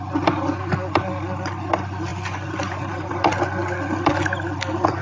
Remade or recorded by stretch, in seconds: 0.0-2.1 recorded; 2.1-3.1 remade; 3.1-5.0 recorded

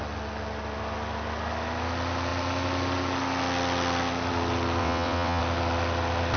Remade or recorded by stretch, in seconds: 0.0-4.8 recorded; 4.8-5.4 remade; 5.4-6.4 recorded

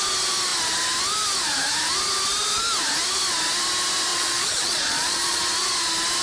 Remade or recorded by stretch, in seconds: 0.0-4.1 recorded; 4.1-5.4 remade; 5.4-6.2 recorded

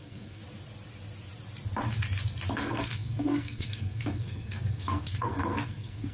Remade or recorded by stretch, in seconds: 0.0-0.4 remade; 0.4-2.5 recorded; 2.5-6.1 remade

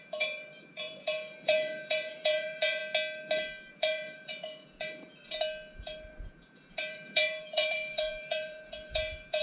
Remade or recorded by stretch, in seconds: 0.0-2.8 remade; 2.8-3.7 recorded; 3.7-5.2 remade; 5.2-5.7 recorded; 5.7-9.4 remade